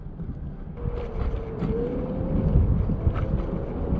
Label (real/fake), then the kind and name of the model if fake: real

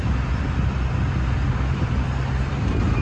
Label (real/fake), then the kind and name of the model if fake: real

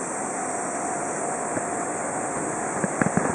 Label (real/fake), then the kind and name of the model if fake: real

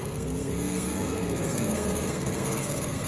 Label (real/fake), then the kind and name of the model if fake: fake, codec, SNAC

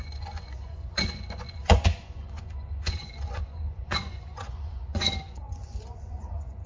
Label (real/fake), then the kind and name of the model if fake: fake, vocoder, Vocos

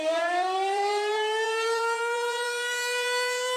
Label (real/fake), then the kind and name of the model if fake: fake, vocoder, BigVGAN v2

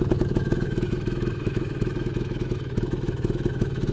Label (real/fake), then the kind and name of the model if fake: fake, autoencoder, DAC-VAE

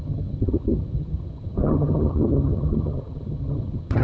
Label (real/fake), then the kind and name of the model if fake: fake, vocoder, HiFi-GAN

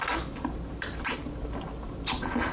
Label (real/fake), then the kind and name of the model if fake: real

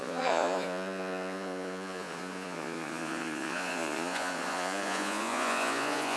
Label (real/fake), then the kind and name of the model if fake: fake, vocoder, Vocos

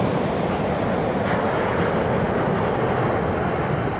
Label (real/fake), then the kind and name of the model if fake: real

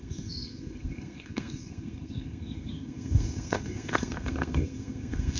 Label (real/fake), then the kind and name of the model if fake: fake, codec, SNAC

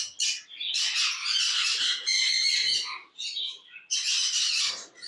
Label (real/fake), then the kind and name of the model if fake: real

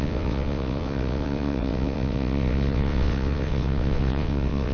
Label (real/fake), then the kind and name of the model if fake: fake, vocoder, WaveNeXt